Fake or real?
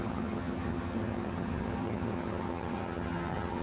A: fake